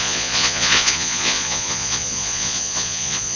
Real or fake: fake